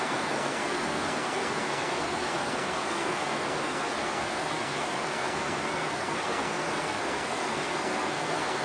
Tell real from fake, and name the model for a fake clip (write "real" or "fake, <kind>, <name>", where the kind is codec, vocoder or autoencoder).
fake, codec, SNAC